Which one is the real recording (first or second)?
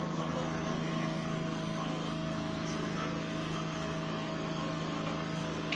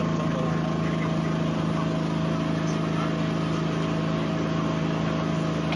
second